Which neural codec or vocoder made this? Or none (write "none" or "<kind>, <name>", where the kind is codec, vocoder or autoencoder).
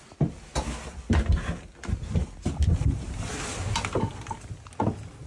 none